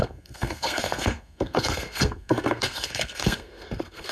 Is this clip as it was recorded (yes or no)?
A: no